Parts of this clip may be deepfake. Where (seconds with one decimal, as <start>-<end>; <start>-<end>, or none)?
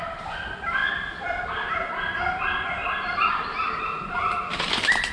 none